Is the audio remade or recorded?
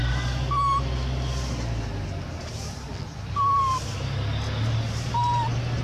recorded